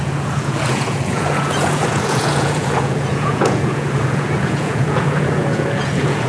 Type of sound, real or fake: fake